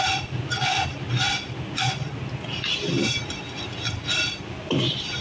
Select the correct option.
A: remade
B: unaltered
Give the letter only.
B